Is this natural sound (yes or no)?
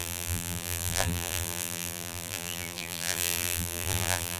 no